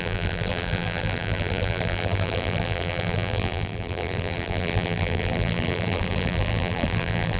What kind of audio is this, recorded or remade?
remade